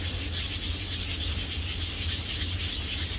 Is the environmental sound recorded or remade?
recorded